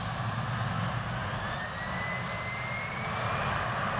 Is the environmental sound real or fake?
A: real